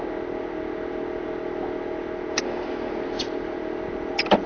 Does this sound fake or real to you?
real